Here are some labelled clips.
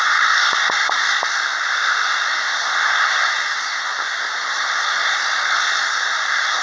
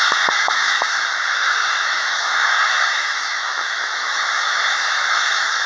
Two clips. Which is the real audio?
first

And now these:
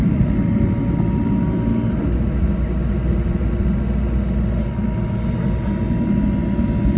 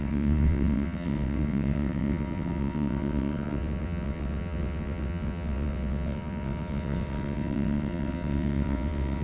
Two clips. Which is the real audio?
first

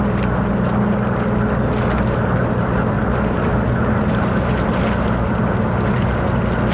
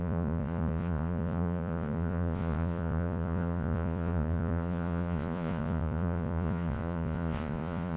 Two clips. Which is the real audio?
first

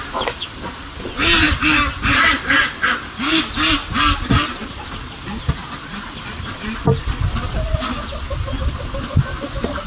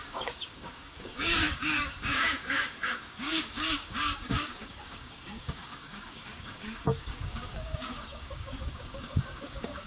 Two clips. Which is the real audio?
first